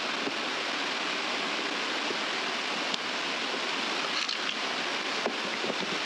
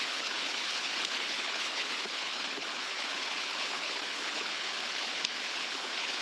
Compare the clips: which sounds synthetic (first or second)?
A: second